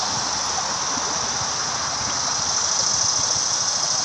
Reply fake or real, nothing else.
real